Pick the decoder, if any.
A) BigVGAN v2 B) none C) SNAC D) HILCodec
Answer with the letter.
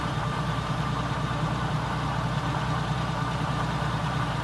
A